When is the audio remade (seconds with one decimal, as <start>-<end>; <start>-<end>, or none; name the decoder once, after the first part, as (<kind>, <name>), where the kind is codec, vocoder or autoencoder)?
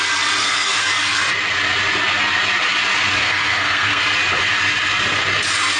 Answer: 0.4-0.9 (codec, SNAC); 3.2-4.0